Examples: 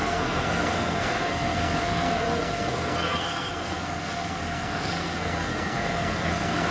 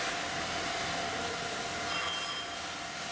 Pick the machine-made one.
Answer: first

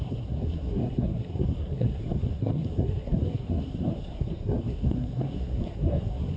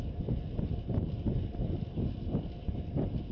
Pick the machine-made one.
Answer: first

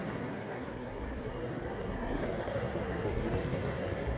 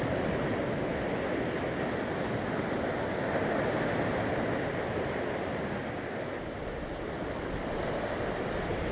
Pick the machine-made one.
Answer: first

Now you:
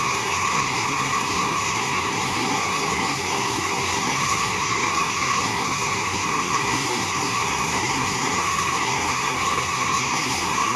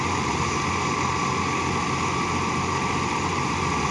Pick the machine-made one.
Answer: first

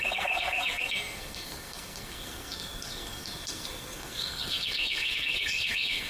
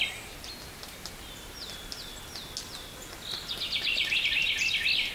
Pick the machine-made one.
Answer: first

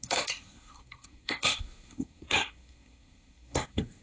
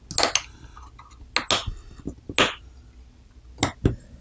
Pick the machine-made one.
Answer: first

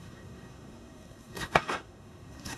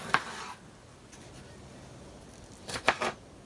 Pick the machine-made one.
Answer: first